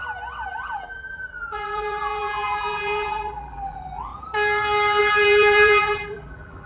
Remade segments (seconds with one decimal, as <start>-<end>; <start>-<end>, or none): 0.5-4.1; 5.0-6.7